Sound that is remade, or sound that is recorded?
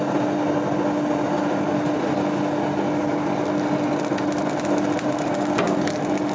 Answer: recorded